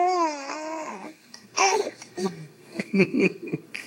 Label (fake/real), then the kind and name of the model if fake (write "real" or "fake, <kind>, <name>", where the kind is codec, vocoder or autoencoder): fake, codec, SNAC